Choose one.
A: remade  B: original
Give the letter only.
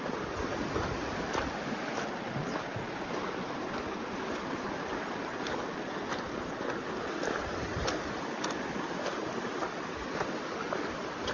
B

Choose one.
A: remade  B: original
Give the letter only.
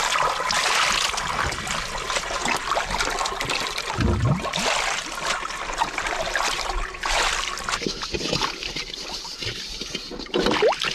B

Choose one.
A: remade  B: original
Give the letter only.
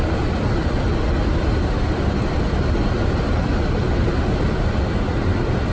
B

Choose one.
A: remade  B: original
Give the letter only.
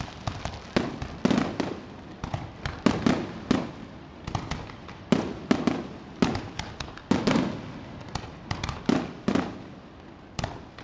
B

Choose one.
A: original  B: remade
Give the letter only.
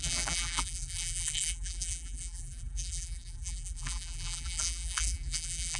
B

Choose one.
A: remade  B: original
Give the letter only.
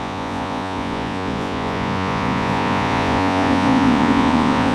A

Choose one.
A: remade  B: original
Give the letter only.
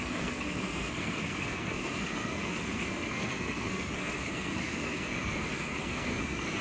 A